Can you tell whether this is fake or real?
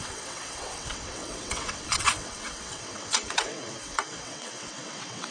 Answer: fake